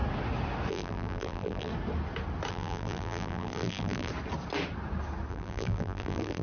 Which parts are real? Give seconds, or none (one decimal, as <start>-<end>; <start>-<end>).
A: 0.0-0.7; 1.7-2.5; 4.1-5.3